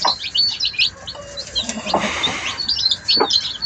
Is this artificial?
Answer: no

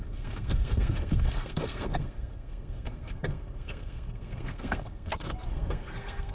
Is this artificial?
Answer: yes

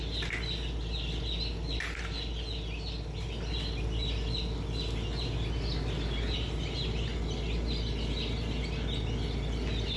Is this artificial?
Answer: no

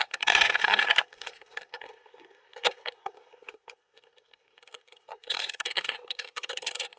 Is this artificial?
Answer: yes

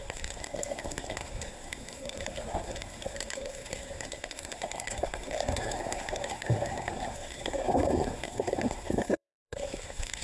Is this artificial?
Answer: yes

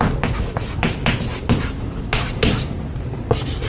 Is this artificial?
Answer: no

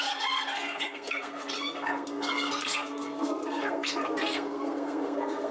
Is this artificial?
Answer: yes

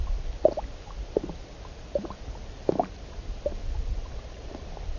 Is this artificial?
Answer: no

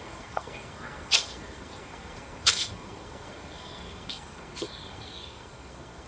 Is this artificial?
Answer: yes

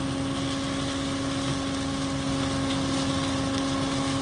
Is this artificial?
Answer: no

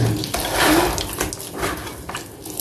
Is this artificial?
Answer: no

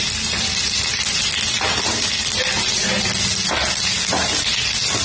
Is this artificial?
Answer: no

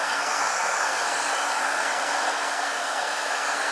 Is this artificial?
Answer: yes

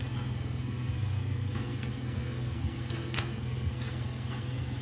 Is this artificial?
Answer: yes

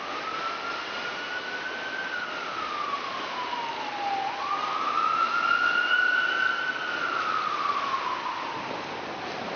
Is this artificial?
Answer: no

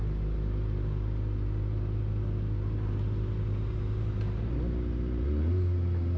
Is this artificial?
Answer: no